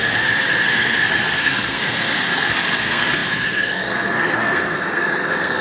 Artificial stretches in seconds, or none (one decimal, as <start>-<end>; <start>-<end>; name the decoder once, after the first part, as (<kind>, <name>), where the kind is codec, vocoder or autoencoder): 0.0-5.6 (codec, SNAC)